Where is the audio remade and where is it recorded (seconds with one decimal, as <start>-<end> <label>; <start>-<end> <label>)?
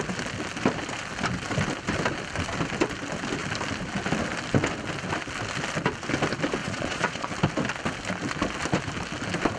0.0-6.6 recorded; 6.6-7.3 remade; 7.3-9.6 recorded